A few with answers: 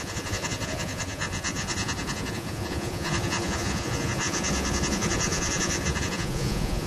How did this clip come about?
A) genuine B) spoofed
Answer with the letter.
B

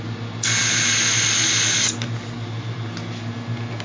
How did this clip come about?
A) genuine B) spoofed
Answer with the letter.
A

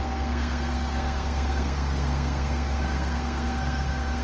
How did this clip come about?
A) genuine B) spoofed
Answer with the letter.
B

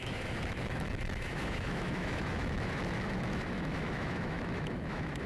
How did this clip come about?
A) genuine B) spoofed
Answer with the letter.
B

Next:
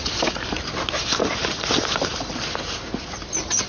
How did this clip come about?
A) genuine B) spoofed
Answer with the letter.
B